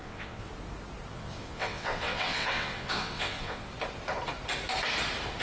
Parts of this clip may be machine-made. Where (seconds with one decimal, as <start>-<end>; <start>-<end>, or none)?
0.0-0.5; 1.1-3.7